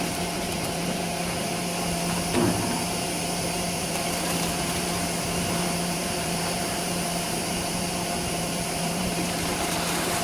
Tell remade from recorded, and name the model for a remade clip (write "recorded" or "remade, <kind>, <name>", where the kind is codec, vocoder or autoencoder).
remade, vocoder, BigVGAN v2